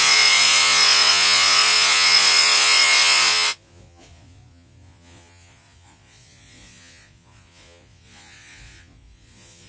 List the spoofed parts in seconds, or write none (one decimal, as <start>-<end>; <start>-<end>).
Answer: 0.0-9.7